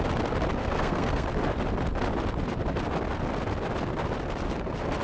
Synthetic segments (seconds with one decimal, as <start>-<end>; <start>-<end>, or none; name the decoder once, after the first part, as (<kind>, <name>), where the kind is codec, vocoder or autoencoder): 0.6-1.3 (codec, SNAC)